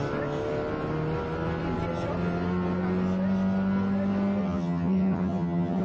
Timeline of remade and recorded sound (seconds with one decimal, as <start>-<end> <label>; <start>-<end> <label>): 0.0-4.4 recorded; 4.4-5.8 remade